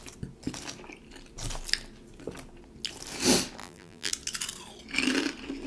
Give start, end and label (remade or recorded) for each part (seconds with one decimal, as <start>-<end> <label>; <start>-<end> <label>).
0.0-3.6 recorded; 3.6-4.1 remade; 4.1-5.7 recorded